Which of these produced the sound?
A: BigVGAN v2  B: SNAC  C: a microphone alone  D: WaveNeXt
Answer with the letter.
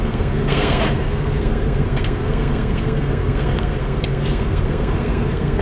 B